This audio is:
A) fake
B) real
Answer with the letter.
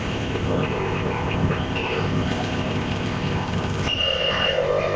A